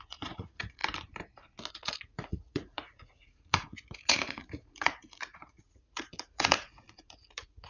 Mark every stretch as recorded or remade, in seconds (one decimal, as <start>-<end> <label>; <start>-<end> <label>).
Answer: 0.0-0.8 remade; 0.8-1.7 recorded; 1.7-7.7 remade

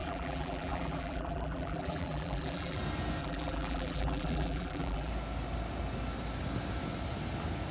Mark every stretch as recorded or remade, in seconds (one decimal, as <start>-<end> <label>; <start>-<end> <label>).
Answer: 0.0-2.8 remade; 2.8-3.2 recorded; 3.2-5.1 remade; 5.1-7.7 recorded

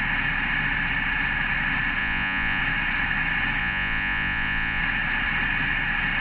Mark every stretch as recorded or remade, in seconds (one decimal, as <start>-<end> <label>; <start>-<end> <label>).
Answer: 0.0-2.0 recorded; 2.0-2.6 remade; 2.6-3.6 recorded; 3.6-4.8 remade; 4.8-6.2 recorded

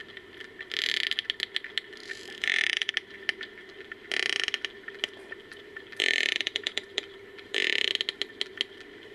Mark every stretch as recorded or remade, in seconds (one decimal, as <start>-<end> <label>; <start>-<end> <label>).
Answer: 0.0-2.0 recorded; 2.0-2.9 remade; 2.9-5.5 recorded; 5.5-7.9 remade; 7.9-9.1 recorded